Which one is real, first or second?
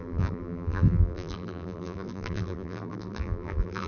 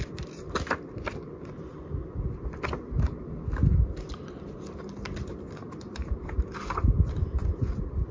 second